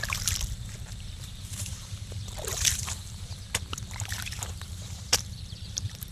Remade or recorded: remade